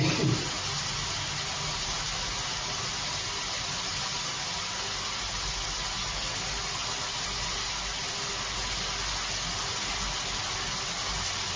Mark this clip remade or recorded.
recorded